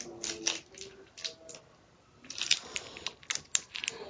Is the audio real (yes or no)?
yes